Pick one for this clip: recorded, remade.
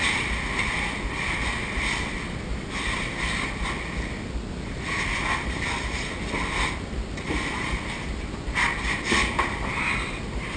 recorded